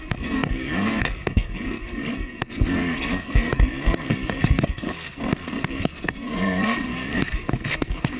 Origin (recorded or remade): remade